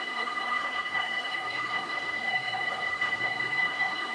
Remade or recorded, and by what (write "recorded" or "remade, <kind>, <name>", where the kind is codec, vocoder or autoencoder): remade, codec, SNAC